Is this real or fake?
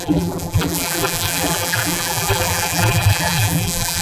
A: fake